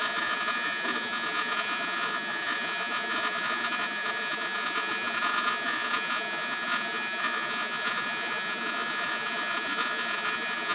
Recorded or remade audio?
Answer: remade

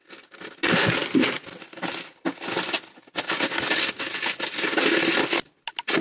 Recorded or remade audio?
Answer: recorded